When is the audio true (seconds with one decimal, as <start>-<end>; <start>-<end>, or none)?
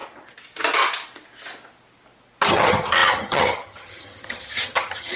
0.0-2.5